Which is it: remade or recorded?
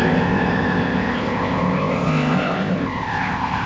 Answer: remade